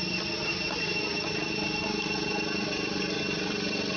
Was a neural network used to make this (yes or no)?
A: no